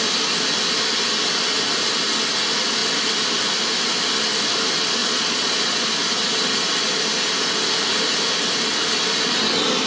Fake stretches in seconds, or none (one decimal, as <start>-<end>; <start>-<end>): 5.0-5.8